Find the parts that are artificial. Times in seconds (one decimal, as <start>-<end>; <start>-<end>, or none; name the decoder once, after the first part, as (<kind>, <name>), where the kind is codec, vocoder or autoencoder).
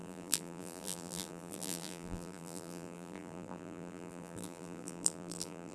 0.0-5.7 (vocoder, BigVGAN v2)